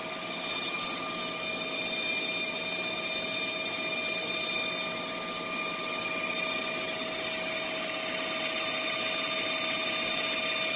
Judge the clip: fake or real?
real